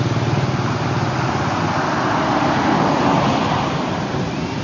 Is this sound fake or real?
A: real